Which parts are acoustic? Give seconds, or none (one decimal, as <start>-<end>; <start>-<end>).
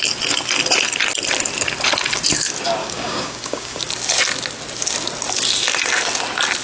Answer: 0.0-2.8; 3.8-6.6